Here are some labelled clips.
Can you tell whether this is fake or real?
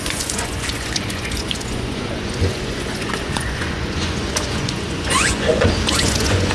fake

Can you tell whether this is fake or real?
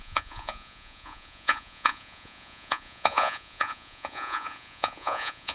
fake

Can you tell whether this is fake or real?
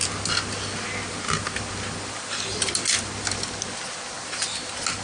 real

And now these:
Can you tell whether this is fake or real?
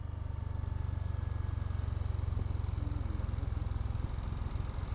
real